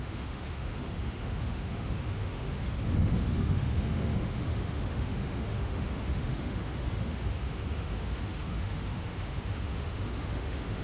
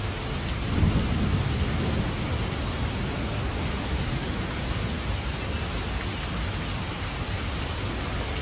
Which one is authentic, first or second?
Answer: second